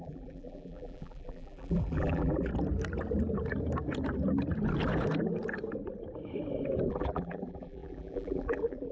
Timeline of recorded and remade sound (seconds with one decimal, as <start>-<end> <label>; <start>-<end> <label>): 0.0-2.5 remade; 2.5-6.9 recorded; 6.9-8.9 remade